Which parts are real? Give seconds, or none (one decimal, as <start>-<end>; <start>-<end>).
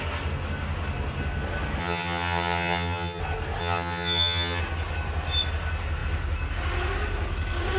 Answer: 0.0-1.8; 3.2-3.6; 4.6-7.8